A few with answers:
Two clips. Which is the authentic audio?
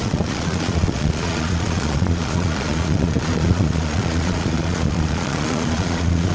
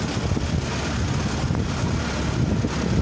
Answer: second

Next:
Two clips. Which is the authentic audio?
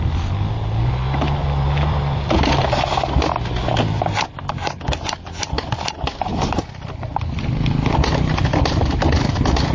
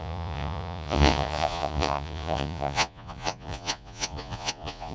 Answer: first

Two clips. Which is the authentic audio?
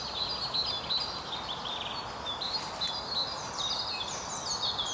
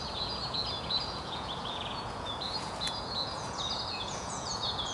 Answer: first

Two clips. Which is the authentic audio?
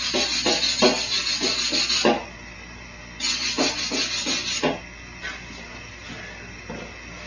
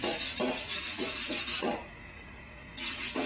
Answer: first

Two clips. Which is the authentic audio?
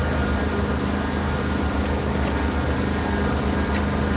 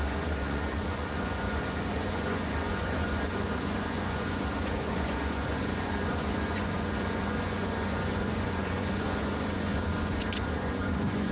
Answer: first